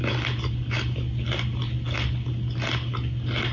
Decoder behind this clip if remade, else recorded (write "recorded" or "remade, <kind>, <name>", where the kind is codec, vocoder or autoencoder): recorded